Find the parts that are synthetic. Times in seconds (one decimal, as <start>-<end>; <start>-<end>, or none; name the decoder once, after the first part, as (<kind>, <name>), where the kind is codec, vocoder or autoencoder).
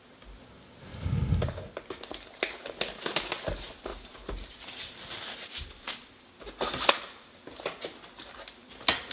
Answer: 3.9-6.9 (vocoder, BigVGAN v2)